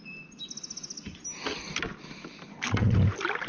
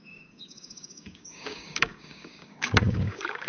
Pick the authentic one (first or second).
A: first